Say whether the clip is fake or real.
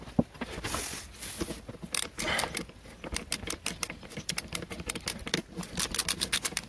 real